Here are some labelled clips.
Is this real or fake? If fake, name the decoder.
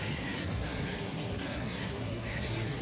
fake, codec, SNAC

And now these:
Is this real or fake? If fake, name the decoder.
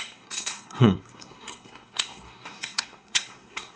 fake, codec, SNAC